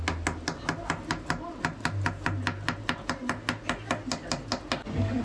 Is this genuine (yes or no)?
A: yes